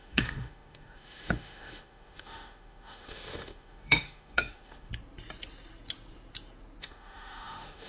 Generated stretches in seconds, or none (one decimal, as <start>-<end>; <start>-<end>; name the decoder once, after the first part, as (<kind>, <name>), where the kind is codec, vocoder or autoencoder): 0.0-4.9 (autoencoder, DAC-VAE); 6.8-7.9

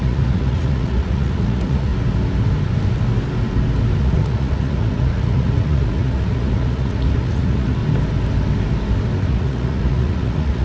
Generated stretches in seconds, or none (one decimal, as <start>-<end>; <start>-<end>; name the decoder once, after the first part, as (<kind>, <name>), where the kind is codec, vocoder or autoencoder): 0.0-1.9 (vocoder, Vocos); 4.0-7.8; 9.2-10.6

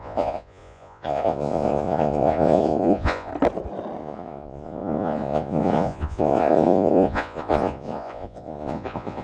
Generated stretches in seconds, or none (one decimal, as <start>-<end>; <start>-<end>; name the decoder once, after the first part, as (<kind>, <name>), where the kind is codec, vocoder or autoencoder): 0.0-3.3 (vocoder, Vocos); 4.0-9.2

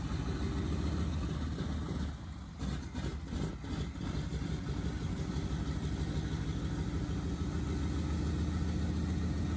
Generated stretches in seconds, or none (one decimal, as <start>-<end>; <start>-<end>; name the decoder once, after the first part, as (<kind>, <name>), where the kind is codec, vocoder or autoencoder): none

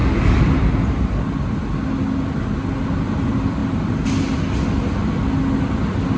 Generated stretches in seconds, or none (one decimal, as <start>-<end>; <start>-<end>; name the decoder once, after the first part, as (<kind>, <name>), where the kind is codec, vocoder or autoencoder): none

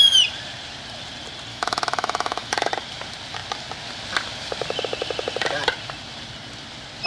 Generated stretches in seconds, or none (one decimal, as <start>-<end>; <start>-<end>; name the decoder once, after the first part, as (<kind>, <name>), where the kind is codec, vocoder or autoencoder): 1.5-2.7 (autoencoder, DAC-VAE)

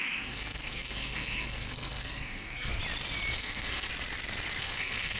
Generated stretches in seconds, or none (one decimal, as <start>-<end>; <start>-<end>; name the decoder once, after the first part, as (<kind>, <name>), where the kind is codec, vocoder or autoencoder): 0.0-2.7 (codec, SNAC); 3.3-3.9; 4.6-5.2